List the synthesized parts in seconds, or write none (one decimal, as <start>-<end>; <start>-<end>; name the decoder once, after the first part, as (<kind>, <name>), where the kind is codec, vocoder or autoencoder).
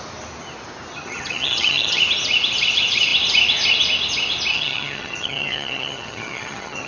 0.9-2.0 (vocoder, HiFi-GAN); 4.5-6.9